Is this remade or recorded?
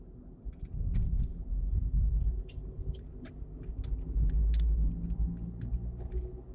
recorded